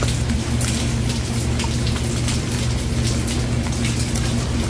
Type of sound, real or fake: real